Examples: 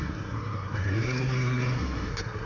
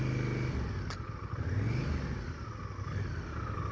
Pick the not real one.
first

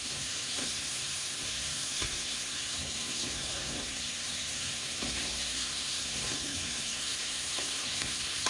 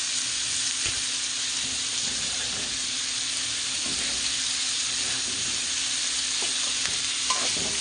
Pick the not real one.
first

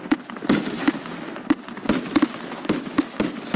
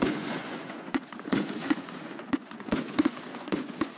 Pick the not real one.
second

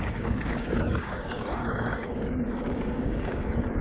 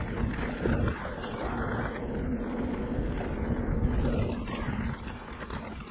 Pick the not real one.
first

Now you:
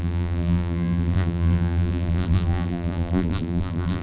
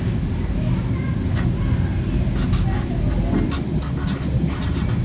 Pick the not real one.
first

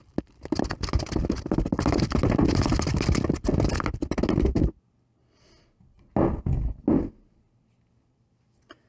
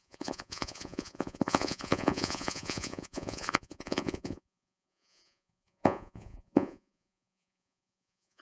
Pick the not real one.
second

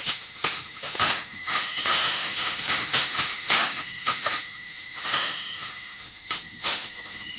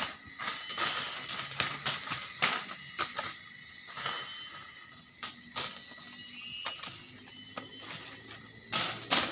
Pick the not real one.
first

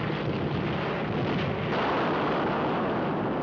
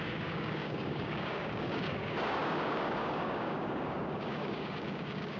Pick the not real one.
second